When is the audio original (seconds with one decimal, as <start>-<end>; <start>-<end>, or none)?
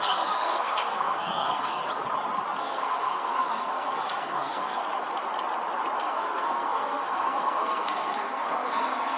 1.8-2.6; 4.8-6.0